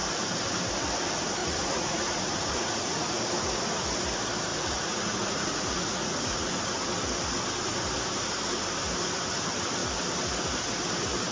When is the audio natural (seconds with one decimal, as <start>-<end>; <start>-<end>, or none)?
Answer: 0.0-1.4; 3.1-4.5; 6.8-11.3